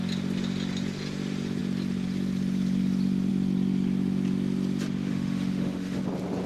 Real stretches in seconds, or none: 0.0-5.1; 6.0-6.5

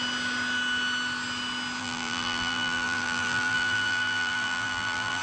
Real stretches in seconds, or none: 0.0-1.8

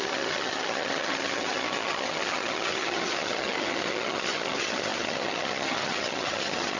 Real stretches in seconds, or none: none

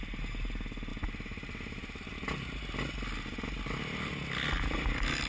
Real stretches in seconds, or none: 0.0-5.3

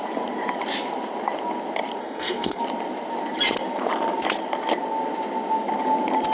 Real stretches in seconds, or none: 0.0-2.0; 2.6-6.3

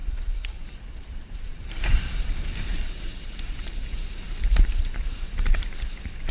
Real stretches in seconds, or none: 0.0-0.9

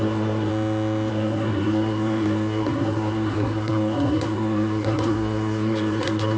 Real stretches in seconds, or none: 0.5-1.1